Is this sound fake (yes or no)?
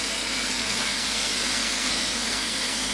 yes